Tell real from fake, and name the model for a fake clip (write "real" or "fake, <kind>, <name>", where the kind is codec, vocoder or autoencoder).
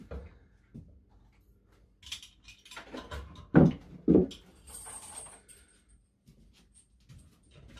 real